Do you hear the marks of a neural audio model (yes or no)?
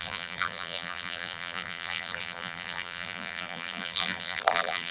yes